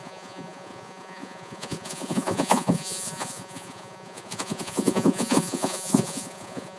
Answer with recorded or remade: remade